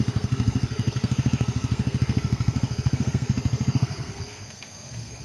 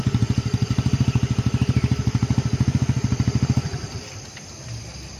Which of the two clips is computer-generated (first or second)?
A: first